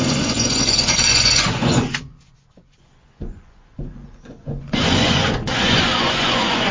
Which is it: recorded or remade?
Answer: remade